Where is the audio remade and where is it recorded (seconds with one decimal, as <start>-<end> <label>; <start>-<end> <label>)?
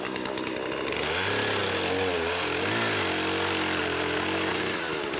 0.0-5.2 recorded